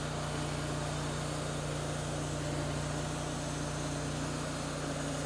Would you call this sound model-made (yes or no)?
no